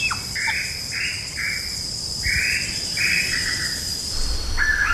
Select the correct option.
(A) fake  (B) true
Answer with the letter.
B